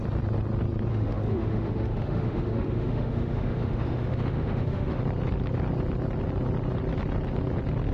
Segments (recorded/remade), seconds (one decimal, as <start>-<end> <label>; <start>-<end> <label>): 0.0-0.9 recorded; 0.9-5.0 remade; 5.0-7.9 recorded